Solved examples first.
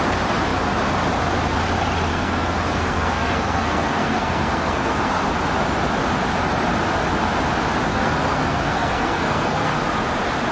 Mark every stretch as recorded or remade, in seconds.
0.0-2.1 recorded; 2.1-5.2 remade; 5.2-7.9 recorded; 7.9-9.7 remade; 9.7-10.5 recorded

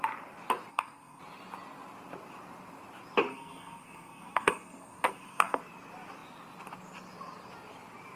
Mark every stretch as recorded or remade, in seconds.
0.0-0.7 recorded; 0.7-1.2 remade; 1.2-3.3 recorded; 3.3-5.6 remade; 5.6-8.2 recorded

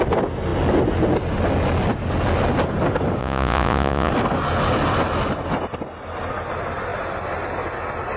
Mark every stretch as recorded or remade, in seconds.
0.0-3.2 recorded; 3.2-4.1 remade; 4.1-8.2 recorded